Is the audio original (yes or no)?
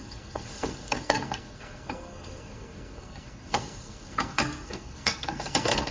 no